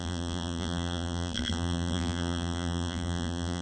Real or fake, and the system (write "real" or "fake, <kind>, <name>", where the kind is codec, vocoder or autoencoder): fake, vocoder, BigVGAN v2